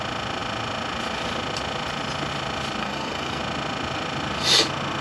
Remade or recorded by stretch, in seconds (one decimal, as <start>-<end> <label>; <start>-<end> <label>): 0.0-2.8 recorded; 2.8-3.4 remade; 3.4-5.0 recorded